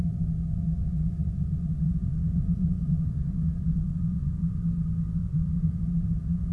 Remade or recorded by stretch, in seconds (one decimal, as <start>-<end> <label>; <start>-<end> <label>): 0.0-0.6 recorded; 0.6-4.5 remade; 4.5-5.2 recorded; 5.2-5.7 remade; 5.7-6.5 recorded